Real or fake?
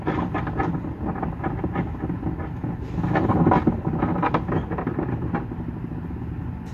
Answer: real